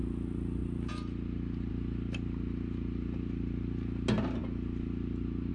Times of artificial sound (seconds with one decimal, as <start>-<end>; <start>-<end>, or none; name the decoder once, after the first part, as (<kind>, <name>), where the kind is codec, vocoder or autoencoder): none